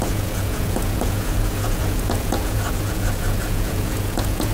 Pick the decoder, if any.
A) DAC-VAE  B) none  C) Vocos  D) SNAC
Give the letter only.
C